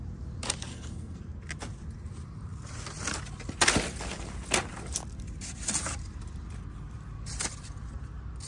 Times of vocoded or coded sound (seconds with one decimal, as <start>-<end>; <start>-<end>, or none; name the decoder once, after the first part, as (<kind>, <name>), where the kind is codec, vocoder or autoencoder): 0.7-1.2 (codec, SNAC)